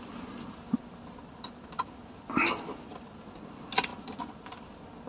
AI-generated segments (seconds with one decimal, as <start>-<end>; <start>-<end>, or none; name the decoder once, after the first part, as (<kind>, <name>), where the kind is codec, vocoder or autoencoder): 3.9-5.1 (vocoder, BigVGAN v2)